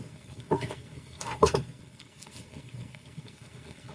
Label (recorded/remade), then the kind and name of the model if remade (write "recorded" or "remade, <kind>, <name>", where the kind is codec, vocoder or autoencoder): remade, codec, SNAC